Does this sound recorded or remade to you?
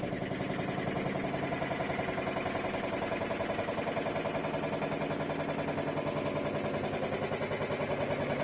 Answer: recorded